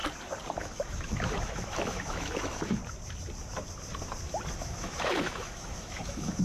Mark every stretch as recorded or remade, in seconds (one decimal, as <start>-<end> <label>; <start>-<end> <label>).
0.0-0.6 recorded; 0.6-2.8 remade; 2.8-4.6 recorded; 4.6-6.4 remade